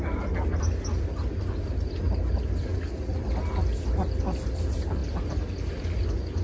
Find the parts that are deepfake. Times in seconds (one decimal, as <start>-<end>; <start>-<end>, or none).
none